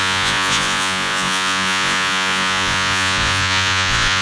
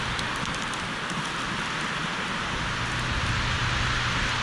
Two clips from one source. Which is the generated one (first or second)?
first